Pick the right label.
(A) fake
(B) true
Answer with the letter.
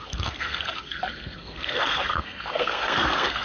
A